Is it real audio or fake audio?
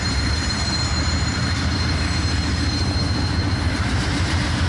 fake